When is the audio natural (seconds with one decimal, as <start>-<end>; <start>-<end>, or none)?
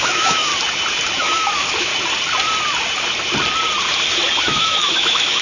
0.5-1.2; 1.9-4.4